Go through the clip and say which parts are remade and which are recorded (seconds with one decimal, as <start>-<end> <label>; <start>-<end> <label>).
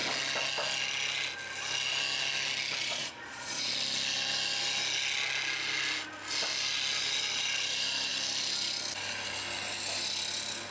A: 0.0-2.8 recorded; 2.8-3.7 remade; 3.7-10.7 recorded